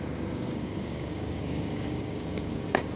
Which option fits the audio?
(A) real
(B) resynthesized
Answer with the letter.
B